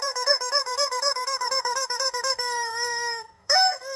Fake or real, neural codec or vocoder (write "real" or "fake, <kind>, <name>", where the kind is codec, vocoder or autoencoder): fake, codec, SNAC